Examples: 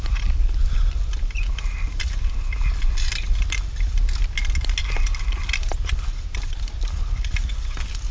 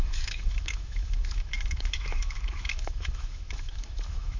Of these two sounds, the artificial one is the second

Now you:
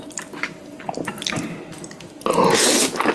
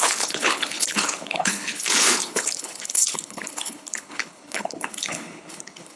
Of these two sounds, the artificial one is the second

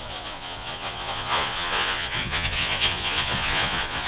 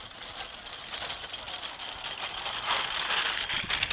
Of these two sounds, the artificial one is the first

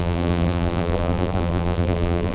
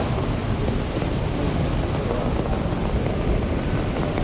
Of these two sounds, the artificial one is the first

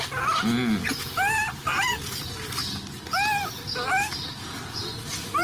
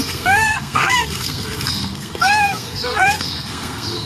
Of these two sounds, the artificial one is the second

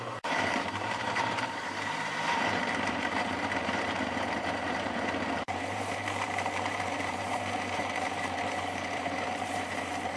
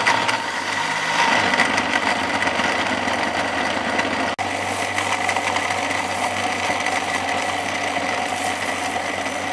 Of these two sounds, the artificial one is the first